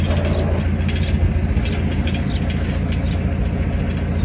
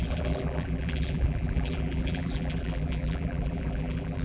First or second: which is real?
first